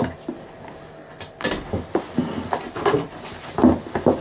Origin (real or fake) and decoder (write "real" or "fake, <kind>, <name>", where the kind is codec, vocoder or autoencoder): real